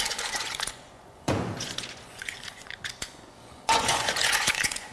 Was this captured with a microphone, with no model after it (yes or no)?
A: no